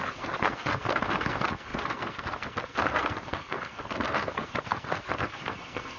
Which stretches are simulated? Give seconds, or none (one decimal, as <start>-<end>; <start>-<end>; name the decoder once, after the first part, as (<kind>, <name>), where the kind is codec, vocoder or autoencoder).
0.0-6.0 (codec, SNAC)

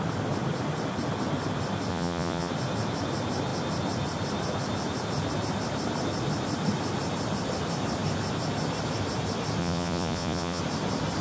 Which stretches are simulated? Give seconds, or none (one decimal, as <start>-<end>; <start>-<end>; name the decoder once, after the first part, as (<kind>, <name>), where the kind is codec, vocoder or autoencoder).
1.9-2.5 (vocoder, Vocos); 9.6-10.6

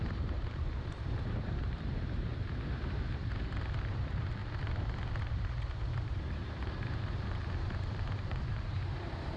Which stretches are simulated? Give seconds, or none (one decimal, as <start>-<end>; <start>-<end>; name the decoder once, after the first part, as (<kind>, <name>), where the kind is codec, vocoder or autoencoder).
0.0-2.3 (vocoder, BigVGAN v2); 3.4-4.4; 5.2-9.4

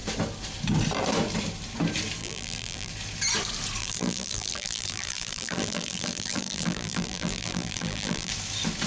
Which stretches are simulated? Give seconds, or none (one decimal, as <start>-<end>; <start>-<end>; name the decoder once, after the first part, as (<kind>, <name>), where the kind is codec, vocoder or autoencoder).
2.2-2.9 (vocoder, BigVGAN v2); 3.8-8.3